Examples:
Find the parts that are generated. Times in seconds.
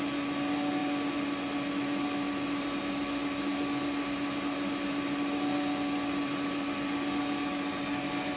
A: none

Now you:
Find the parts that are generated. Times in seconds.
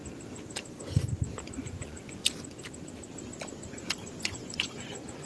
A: 1.6-2.2 (vocoder, Vocos); 4.2-5.3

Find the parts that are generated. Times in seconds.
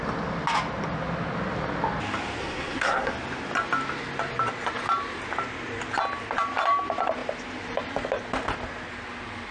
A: 2.4-3.1 (codec, SNAC)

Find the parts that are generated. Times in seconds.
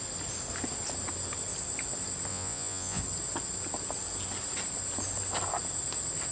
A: 2.3-3.0 (vocoder, Vocos)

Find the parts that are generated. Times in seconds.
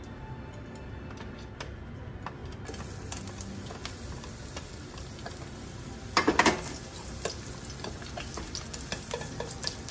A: none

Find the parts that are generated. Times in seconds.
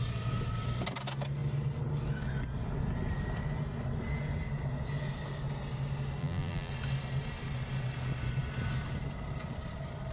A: 6.2-6.7 (vocoder, BigVGAN v2)